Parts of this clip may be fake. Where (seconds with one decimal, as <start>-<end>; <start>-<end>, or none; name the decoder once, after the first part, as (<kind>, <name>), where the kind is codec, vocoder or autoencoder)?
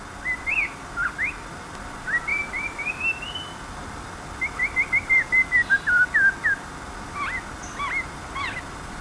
2.3-2.9 (vocoder, BigVGAN v2); 3.5-4.0